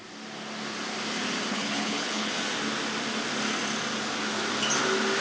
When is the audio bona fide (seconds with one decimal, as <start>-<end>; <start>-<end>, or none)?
0.0-1.5; 2.3-5.2